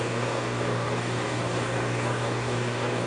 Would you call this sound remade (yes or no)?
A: yes